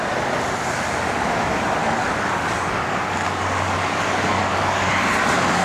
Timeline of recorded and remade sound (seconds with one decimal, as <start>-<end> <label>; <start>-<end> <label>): 0.0-1.8 recorded; 1.8-4.9 remade; 4.9-5.6 recorded